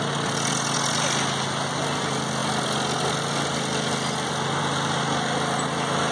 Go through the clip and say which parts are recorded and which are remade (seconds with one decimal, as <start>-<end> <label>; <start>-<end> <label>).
0.0-6.1 recorded